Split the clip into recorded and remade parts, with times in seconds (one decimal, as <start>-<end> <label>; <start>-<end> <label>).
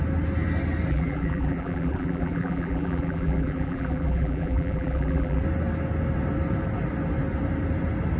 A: 0.0-0.9 recorded; 0.9-5.4 remade; 5.4-8.2 recorded